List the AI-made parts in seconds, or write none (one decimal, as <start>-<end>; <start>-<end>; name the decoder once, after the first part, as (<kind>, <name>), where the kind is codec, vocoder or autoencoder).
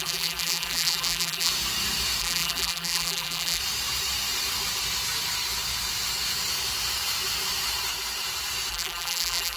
0.0-1.5 (vocoder, BigVGAN v2); 2.2-3.6; 8.7-9.6